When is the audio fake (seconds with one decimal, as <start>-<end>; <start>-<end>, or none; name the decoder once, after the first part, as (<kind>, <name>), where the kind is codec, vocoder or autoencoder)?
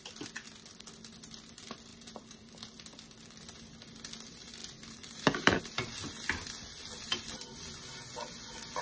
1.9-2.5 (vocoder, BigVGAN v2); 4.6-5.6